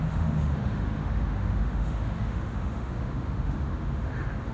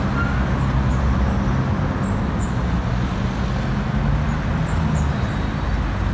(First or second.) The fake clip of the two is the first